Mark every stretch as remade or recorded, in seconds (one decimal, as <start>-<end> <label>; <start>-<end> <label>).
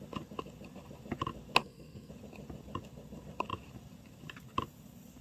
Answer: 0.0-1.6 recorded; 1.6-2.1 remade; 2.1-5.2 recorded